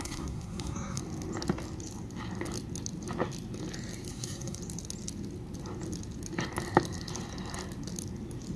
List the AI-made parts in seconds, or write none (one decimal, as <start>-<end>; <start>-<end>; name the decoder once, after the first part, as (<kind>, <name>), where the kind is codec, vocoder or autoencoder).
0.0-1.0 (codec, SNAC); 4.1-4.6